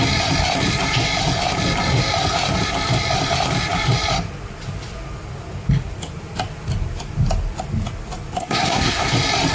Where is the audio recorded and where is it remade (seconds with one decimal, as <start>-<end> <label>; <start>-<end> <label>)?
0.0-8.4 recorded; 8.4-9.1 remade; 9.1-9.5 recorded